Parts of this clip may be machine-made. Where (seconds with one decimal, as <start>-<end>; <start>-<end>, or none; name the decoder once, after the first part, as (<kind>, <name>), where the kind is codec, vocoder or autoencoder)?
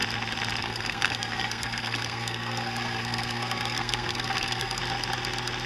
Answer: 0.6-4.8 (codec, SNAC)